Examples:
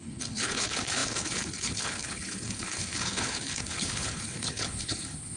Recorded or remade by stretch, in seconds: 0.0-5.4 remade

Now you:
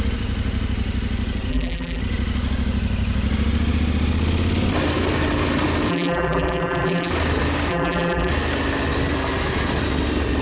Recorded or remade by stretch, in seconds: 0.0-1.5 recorded; 1.5-2.0 remade; 2.0-5.9 recorded; 5.9-7.1 remade; 7.1-7.7 recorded; 7.7-8.3 remade; 8.3-10.4 recorded

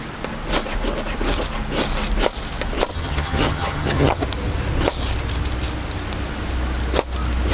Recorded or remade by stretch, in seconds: 0.0-2.9 recorded; 2.9-4.2 remade; 4.2-7.5 recorded

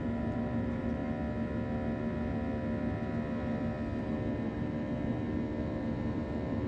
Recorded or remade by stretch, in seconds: 0.0-1.0 remade; 1.0-4.0 recorded; 4.0-6.7 remade

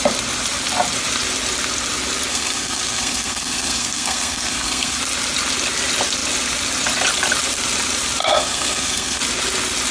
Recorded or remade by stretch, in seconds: 0.0-2.3 recorded; 2.3-5.0 remade; 5.0-8.2 recorded; 8.2-9.2 remade; 9.2-9.9 recorded